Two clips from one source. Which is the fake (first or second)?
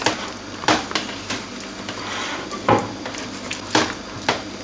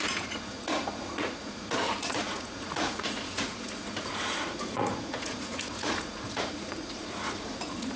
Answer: second